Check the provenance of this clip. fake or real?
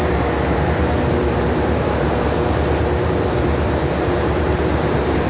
fake